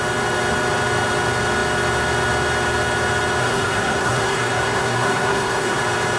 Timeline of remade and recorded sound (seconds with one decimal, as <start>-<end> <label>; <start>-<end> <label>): 0.0-3.4 recorded; 3.4-5.8 remade; 5.8-6.2 recorded